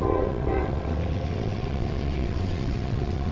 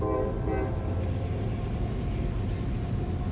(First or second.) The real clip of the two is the second